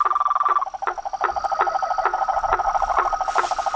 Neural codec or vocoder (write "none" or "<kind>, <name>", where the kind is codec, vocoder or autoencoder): none